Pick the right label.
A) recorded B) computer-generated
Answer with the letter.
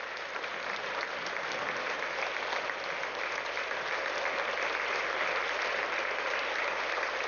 A